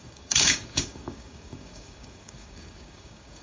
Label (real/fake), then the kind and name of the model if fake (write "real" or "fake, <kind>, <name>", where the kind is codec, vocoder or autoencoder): fake, codec, DAC